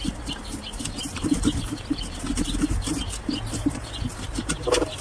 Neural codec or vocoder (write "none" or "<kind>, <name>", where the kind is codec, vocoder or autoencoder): none